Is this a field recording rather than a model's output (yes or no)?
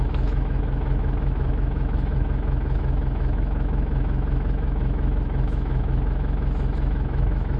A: no